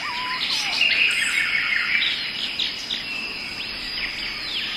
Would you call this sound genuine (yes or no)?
yes